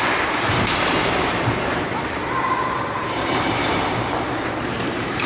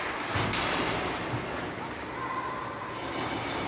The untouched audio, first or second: second